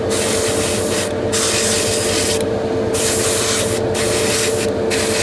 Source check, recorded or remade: recorded